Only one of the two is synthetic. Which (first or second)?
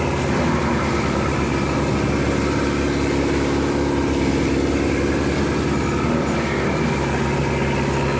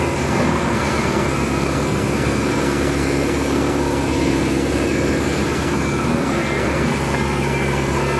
second